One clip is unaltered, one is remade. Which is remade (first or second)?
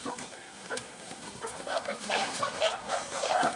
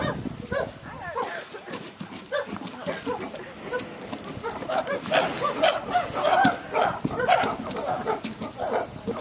first